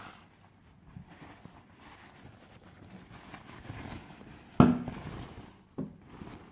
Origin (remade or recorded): recorded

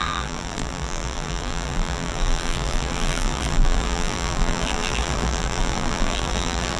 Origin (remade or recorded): remade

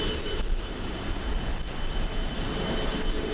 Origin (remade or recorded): recorded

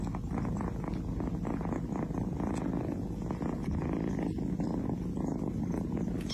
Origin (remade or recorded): recorded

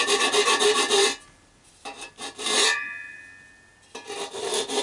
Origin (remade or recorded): recorded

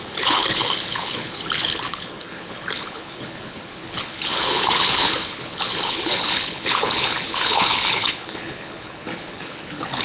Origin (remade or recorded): remade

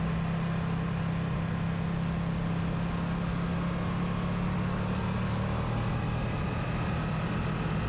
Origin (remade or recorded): recorded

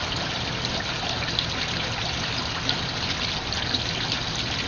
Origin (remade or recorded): recorded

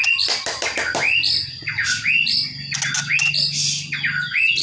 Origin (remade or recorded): recorded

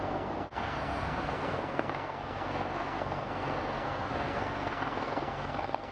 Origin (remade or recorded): remade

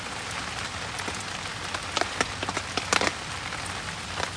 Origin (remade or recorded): recorded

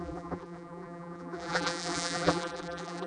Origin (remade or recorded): remade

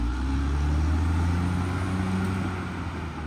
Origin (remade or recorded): recorded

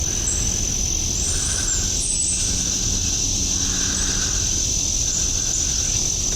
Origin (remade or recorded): recorded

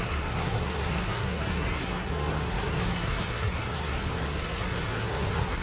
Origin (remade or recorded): remade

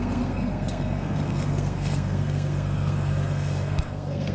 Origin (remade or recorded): remade